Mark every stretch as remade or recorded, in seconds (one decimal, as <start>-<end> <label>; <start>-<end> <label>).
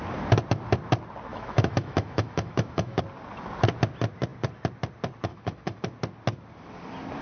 0.0-1.3 recorded; 1.3-3.0 remade; 3.0-5.3 recorded; 5.3-5.8 remade; 5.8-7.2 recorded